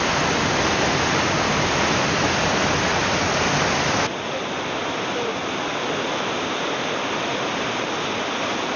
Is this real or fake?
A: real